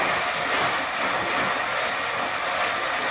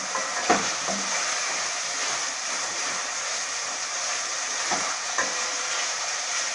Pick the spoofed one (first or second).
second